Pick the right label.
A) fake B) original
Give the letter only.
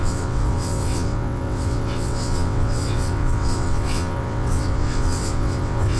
A